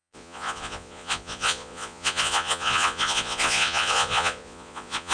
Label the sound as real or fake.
fake